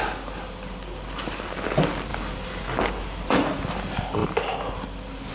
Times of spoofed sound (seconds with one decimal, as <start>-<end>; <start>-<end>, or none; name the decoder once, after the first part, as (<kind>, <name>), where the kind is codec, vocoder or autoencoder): none